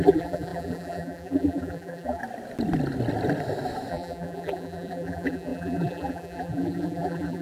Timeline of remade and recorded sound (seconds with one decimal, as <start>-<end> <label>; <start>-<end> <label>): 0.0-2.2 remade; 2.2-3.9 recorded; 3.9-7.4 remade